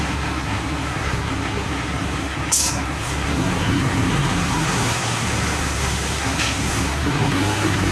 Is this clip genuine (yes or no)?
no